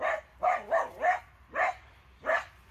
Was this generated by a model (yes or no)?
no